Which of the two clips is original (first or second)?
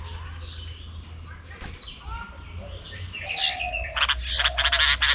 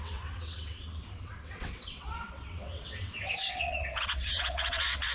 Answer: first